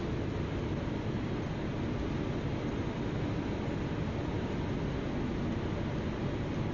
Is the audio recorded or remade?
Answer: recorded